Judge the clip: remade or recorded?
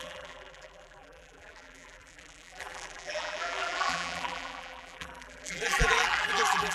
remade